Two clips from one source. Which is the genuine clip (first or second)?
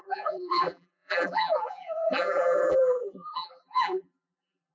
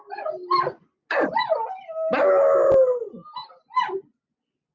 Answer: second